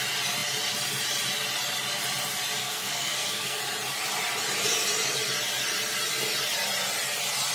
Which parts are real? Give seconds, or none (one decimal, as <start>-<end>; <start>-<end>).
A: 0.0-2.6; 3.6-7.5